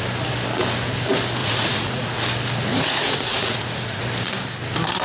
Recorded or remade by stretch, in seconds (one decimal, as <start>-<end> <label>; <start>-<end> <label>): 0.0-1.4 recorded; 1.4-2.2 remade; 2.2-2.7 recorded; 2.7-4.0 remade; 4.0-5.0 recorded